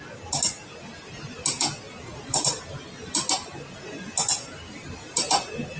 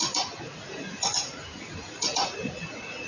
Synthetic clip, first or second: second